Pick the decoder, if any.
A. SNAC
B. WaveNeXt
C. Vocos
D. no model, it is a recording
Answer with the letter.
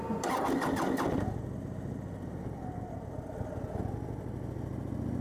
D